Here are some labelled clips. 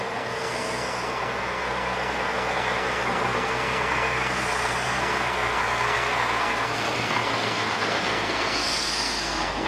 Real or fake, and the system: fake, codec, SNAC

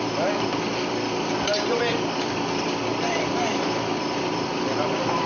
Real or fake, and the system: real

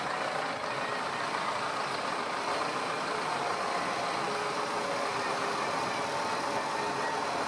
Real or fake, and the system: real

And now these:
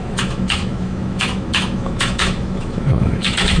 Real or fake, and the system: fake, autoencoder, DAC-VAE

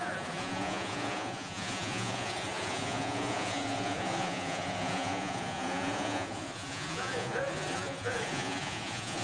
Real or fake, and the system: fake, vocoder, Vocos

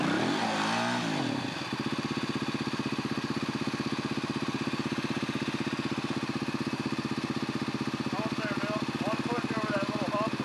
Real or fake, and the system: real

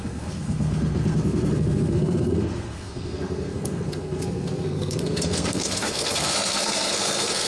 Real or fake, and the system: fake, codec, SNAC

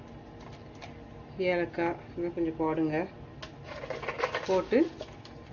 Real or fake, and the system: real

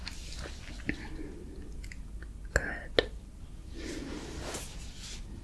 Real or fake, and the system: real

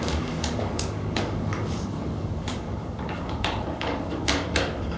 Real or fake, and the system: fake, codec, DAC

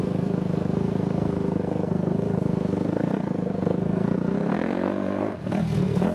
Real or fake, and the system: fake, codec, SNAC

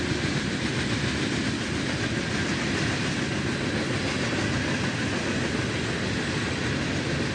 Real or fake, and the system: real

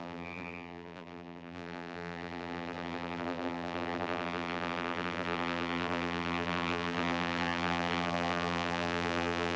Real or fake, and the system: fake, vocoder, BigVGAN v2